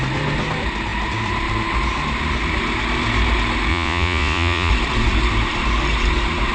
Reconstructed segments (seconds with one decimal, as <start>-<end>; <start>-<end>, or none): 3.7-4.7